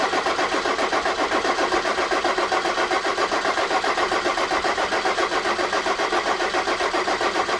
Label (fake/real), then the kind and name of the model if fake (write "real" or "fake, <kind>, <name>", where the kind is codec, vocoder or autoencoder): real